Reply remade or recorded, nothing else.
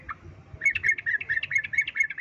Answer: recorded